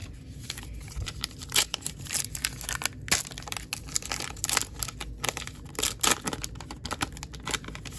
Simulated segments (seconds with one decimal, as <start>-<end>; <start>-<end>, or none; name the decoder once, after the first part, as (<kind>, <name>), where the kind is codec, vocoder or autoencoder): 0.0-2.4 (vocoder, BigVGAN v2)